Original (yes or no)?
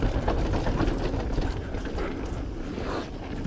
yes